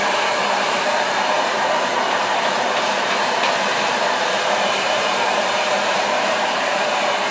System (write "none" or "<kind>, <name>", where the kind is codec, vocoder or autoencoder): vocoder, BigVGAN v2